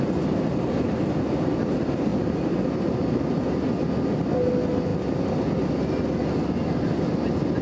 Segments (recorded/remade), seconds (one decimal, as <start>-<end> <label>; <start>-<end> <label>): 0.0-2.1 recorded; 2.1-3.0 remade; 3.0-7.6 recorded